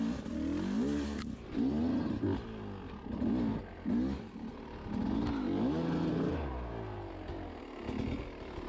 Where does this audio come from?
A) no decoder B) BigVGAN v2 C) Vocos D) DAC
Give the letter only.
A